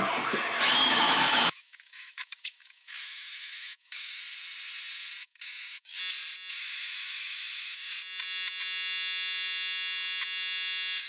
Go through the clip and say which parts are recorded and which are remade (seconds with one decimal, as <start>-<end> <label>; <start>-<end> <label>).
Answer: 0.0-0.8 recorded; 0.8-4.2 remade; 4.2-5.2 recorded; 5.2-6.0 remade; 6.0-6.5 recorded; 6.5-7.9 remade; 7.9-11.1 recorded